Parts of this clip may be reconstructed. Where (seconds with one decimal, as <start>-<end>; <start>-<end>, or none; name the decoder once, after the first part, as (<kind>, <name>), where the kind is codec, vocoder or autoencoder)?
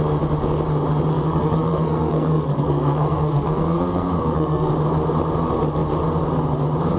1.1-4.7 (codec, SNAC)